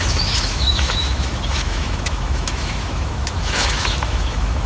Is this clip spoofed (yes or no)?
yes